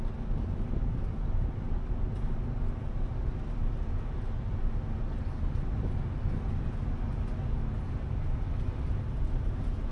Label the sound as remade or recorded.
recorded